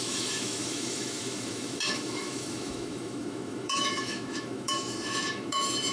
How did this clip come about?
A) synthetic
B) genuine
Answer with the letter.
A